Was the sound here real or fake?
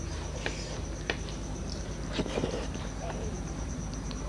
fake